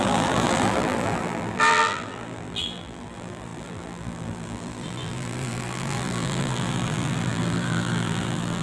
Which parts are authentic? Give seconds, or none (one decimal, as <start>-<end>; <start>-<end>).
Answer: none